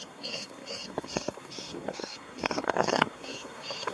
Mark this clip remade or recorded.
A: remade